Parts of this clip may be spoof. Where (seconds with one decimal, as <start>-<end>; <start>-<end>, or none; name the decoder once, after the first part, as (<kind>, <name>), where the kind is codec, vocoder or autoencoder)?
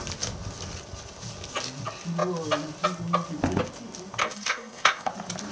4.2-5.1 (codec, ZipCodec)